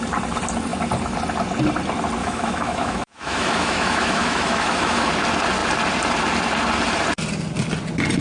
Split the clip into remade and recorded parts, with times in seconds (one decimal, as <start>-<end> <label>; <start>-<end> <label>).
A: 0.0-2.2 recorded; 2.2-5.1 remade; 5.1-8.2 recorded